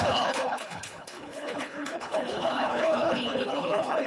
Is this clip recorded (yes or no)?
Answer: no